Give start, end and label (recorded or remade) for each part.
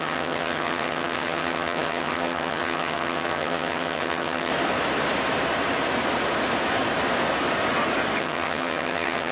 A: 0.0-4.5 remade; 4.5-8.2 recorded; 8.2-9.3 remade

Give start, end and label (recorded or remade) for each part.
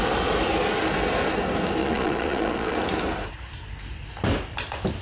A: 0.0-1.8 recorded; 1.8-2.8 remade; 2.8-5.0 recorded